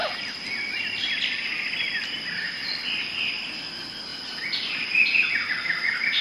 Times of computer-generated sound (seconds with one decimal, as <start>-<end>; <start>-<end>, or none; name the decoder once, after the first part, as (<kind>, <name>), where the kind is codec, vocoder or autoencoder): 0.0-4.1 (vocoder, BigVGAN v2); 5.5-6.2